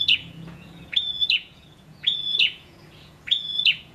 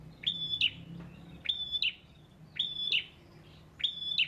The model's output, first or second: first